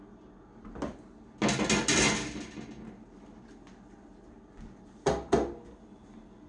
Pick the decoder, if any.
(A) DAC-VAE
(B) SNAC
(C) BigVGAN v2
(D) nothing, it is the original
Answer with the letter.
D